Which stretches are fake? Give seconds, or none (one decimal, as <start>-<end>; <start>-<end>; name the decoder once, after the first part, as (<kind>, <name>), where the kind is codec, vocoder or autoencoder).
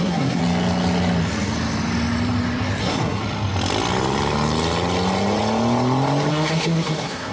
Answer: 0.0-0.4 (codec, SNAC); 2.8-3.2; 6.3-7.3